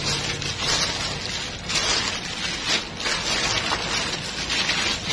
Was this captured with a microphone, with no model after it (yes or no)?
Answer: yes